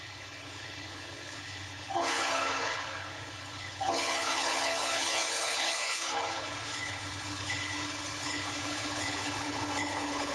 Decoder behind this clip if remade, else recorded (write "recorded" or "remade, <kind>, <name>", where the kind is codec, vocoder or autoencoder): remade, codec, HILCodec